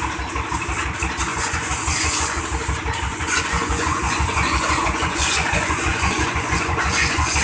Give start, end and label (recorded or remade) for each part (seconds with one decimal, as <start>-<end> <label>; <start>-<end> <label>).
0.0-1.3 recorded; 1.3-2.4 remade; 2.4-3.1 recorded; 3.1-7.4 remade